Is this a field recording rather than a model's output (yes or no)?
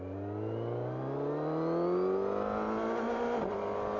yes